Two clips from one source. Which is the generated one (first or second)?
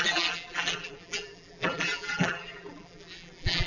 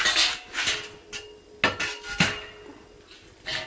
first